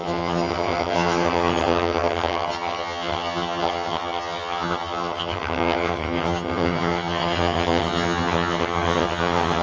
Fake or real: fake